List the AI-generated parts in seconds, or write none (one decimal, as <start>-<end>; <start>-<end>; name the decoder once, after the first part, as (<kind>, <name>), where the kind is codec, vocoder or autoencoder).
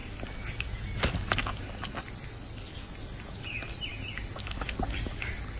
none